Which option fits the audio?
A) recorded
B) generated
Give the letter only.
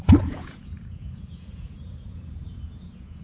B